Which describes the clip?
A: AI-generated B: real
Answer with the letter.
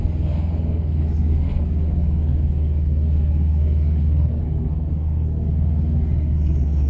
A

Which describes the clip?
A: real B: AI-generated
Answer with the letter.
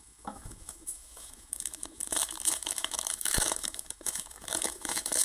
B